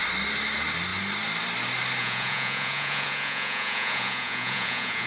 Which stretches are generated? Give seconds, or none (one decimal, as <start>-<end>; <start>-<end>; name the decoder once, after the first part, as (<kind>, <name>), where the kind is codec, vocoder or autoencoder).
2.0-5.1 (vocoder, Vocos)